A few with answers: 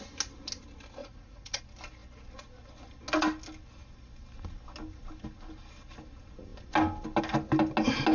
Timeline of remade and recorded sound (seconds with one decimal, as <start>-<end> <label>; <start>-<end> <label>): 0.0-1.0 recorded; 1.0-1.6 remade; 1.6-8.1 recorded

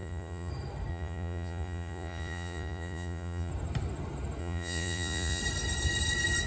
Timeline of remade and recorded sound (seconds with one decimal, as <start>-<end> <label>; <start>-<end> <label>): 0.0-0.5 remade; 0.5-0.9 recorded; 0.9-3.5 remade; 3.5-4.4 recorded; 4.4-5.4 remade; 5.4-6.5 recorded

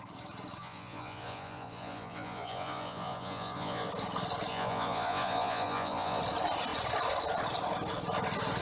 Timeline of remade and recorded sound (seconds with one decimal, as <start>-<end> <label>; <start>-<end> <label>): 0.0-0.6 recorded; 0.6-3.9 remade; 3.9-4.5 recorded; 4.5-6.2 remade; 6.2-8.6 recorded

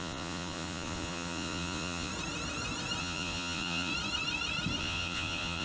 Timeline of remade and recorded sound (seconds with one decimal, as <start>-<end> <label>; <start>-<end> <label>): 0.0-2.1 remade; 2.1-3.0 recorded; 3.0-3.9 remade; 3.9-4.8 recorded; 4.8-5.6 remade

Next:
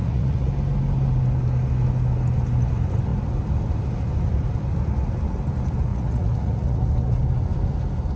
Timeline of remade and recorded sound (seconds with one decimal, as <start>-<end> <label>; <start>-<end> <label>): 0.0-0.5 remade; 0.5-5.9 recorded; 5.9-6.9 remade; 6.9-8.2 recorded

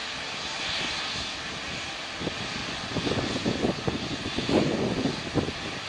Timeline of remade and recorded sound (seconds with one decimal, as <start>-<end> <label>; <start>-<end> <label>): 0.0-2.6 recorded; 2.6-5.1 remade; 5.1-5.9 recorded

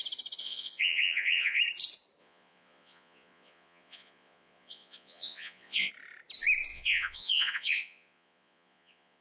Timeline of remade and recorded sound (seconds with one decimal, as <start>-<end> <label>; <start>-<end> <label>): 0.0-0.4 recorded; 0.4-1.6 remade; 1.6-2.2 recorded; 2.2-5.9 remade; 5.9-6.7 recorded; 6.7-9.2 remade

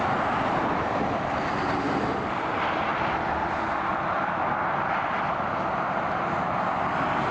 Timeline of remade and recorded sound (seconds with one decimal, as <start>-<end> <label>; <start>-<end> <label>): 0.0-7.3 recorded